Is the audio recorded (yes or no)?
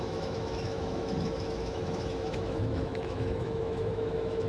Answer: no